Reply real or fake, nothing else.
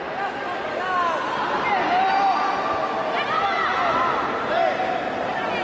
real